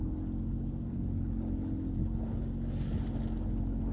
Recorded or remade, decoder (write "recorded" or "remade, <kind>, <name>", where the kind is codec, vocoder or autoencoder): recorded